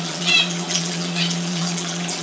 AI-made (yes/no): yes